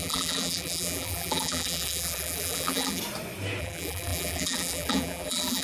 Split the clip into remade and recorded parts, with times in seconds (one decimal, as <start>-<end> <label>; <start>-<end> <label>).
0.0-3.0 remade; 3.0-3.6 recorded; 3.6-5.6 remade